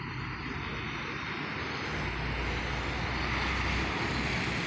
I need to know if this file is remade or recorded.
recorded